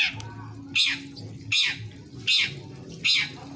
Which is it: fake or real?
real